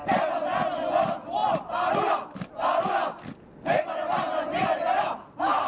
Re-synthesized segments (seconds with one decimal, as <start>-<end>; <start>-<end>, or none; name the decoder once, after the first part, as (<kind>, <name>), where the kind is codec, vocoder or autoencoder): none